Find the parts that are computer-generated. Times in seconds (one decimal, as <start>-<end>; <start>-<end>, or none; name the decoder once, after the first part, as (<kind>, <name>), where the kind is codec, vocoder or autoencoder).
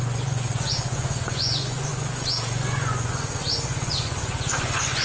0.0-5.0 (vocoder, Vocos)